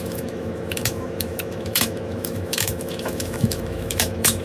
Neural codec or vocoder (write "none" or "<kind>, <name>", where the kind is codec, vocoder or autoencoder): autoencoder, DAC-VAE